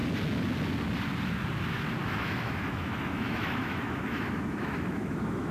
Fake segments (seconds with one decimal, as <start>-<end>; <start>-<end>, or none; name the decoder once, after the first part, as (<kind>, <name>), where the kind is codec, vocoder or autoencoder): 2.0-5.5 (autoencoder, DAC-VAE)